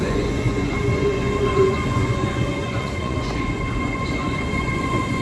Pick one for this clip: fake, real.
fake